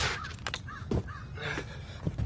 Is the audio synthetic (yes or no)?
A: no